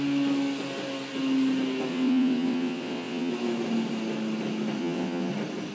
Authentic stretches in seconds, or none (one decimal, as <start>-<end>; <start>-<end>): 0.0-1.9; 3.3-4.8; 5.3-5.7